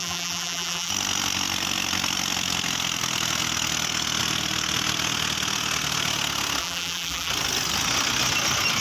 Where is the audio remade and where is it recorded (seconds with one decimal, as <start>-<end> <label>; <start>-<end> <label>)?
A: 0.0-0.9 remade; 0.9-6.6 recorded; 6.6-7.3 remade; 7.3-8.8 recorded